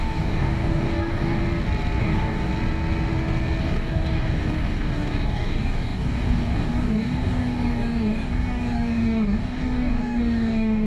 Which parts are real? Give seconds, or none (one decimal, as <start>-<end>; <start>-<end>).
1.4-2.0; 2.5-3.6